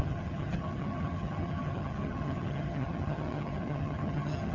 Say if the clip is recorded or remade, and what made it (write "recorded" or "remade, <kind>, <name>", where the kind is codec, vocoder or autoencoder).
remade, vocoder, HiFi-GAN